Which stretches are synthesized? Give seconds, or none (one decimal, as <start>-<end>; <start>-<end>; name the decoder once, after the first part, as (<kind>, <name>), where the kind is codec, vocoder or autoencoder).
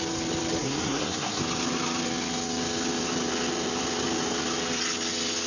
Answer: 0.6-1.4 (codec, SNAC)